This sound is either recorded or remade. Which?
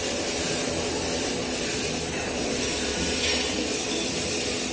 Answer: remade